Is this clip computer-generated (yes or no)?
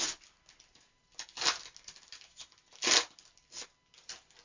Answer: no